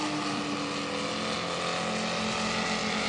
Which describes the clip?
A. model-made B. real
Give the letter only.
B